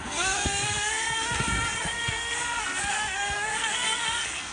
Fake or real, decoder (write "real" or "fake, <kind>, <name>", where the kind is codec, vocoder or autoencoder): fake, codec, SNAC